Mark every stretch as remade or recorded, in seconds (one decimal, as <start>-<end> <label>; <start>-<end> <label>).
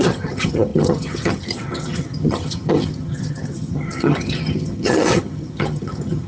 0.0-6.3 remade